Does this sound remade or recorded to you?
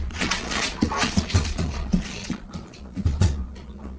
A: remade